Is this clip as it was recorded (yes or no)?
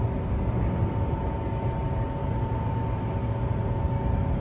yes